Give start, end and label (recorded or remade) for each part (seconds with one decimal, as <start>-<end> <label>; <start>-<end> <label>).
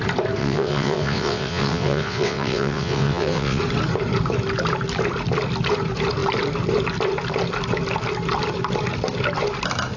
0.0-0.4 recorded; 0.4-3.6 remade; 3.6-10.0 recorded